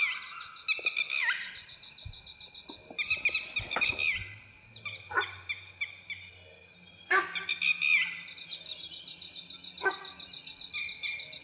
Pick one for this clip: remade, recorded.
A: recorded